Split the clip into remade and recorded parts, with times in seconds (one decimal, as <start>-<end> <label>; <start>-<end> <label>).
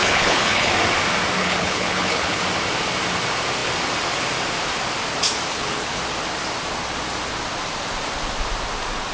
0.0-0.7 remade; 0.7-1.4 recorded; 1.4-2.4 remade; 2.4-5.5 recorded; 5.5-6.0 remade; 6.0-9.1 recorded